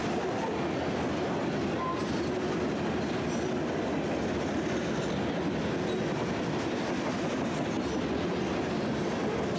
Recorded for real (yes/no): yes